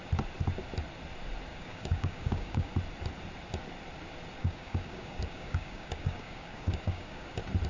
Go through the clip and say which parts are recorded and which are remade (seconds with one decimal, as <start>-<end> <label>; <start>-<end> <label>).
0.0-1.5 recorded; 1.5-2.7 remade; 2.7-4.4 recorded; 4.4-7.3 remade; 7.3-7.7 recorded